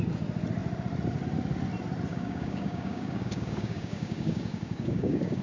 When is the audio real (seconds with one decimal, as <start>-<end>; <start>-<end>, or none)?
0.0-2.1